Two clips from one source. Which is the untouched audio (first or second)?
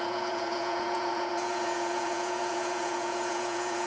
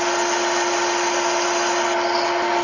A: second